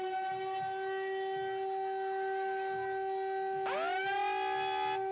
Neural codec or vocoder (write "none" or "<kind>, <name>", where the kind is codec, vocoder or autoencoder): none